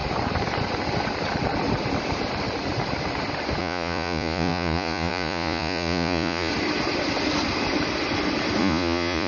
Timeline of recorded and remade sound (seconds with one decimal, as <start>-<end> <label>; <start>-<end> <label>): 0.0-3.6 recorded; 3.6-6.5 remade; 6.5-8.6 recorded; 8.6-9.3 remade